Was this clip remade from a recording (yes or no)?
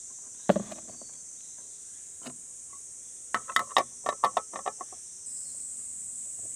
no